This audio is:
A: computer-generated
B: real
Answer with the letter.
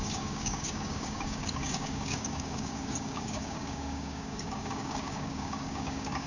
A